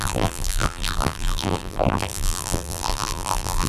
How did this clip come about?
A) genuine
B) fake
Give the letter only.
B